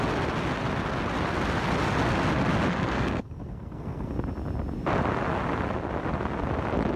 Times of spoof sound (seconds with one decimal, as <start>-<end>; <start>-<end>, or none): 2.7-4.1

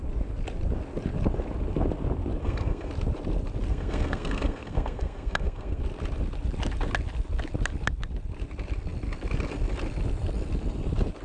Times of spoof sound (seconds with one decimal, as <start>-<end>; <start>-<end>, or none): 2.4-2.9; 3.7-5.8

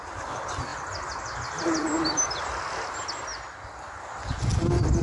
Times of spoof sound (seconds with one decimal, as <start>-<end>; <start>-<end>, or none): none

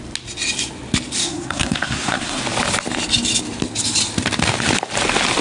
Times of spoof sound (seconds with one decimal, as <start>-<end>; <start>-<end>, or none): 1.2-2.4

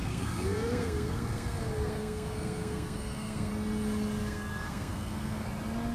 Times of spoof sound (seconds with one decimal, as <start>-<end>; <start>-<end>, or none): 0.0-3.5; 4.2-5.5

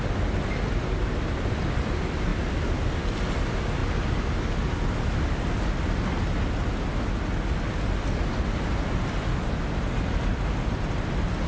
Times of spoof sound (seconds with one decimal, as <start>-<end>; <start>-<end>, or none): none